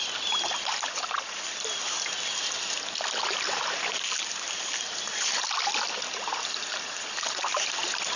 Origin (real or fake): real